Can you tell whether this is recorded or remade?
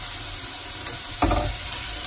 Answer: recorded